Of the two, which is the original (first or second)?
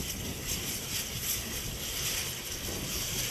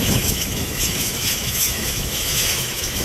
first